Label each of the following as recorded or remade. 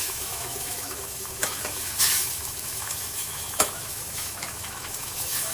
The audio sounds remade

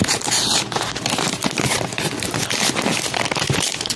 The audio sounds recorded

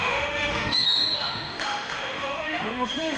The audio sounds remade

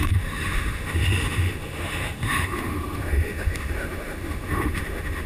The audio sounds remade